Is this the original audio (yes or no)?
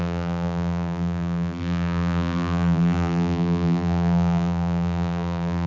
no